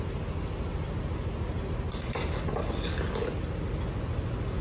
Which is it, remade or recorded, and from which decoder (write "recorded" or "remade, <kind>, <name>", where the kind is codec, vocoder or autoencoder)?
recorded